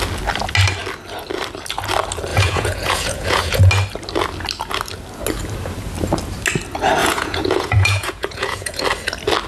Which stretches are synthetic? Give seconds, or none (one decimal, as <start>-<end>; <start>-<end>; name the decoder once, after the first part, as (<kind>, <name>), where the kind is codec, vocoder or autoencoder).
2.3-3.7 (vocoder, Vocos); 7.0-8.8